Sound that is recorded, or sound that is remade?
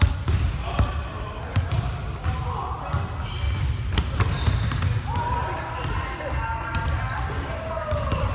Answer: recorded